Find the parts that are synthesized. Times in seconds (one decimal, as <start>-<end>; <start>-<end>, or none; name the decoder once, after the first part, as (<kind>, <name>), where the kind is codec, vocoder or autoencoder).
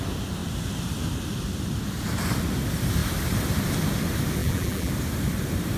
4.4-4.9 (vocoder, BigVGAN v2)